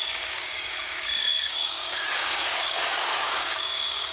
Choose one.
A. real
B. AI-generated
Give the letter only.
B